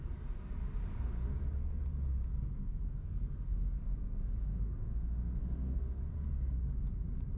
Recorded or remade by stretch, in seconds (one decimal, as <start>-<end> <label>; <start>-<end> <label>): 0.0-2.3 recorded; 2.3-6.7 remade; 6.7-7.4 recorded